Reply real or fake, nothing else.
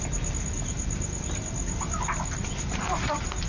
real